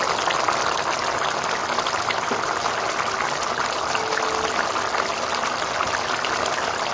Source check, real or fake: real